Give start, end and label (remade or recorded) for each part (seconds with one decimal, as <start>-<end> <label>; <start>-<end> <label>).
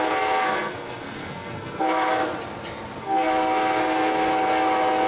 0.0-2.2 remade; 2.2-3.0 recorded; 3.0-4.3 remade; 4.3-5.1 recorded